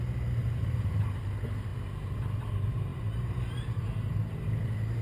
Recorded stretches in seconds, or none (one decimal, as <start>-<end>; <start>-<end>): 0.0-0.4; 1.2-2.9; 4.1-5.0